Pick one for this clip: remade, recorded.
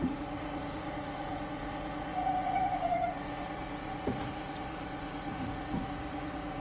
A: remade